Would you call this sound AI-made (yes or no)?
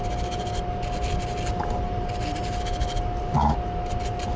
no